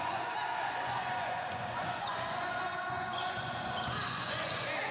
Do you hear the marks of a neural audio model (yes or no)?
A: yes